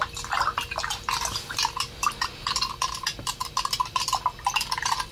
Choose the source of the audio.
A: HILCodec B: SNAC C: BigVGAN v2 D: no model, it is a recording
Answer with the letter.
D